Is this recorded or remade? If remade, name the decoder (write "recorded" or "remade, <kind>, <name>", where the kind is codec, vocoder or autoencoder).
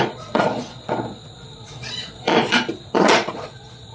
remade, vocoder, Vocos